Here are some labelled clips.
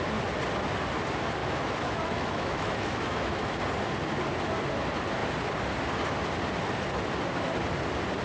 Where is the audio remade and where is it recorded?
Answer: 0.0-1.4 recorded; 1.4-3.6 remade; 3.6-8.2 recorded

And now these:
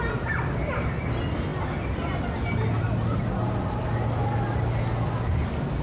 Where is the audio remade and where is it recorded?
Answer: 0.0-5.8 recorded

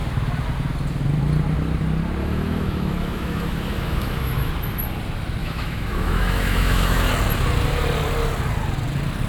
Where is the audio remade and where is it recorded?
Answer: 0.0-2.2 recorded; 2.2-4.5 remade; 4.5-5.4 recorded; 5.4-7.1 remade; 7.1-9.3 recorded

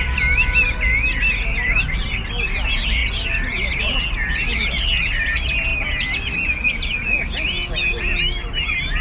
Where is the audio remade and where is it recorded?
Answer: 0.0-9.0 recorded

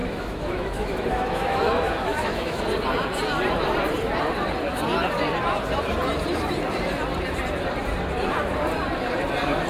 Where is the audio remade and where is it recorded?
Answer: 0.0-2.6 remade; 2.6-9.7 recorded

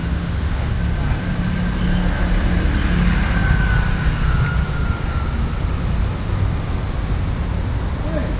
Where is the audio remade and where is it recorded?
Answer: 0.0-0.7 remade; 0.7-8.4 recorded

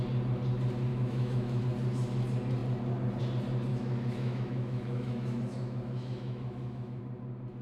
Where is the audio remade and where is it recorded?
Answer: 0.0-0.9 recorded; 0.9-1.6 remade; 1.6-3.7 recorded; 3.7-7.0 remade; 7.0-7.6 recorded

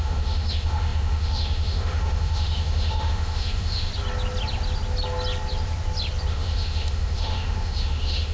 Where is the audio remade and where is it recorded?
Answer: 0.0-3.9 remade; 3.9-6.3 recorded; 6.3-8.3 remade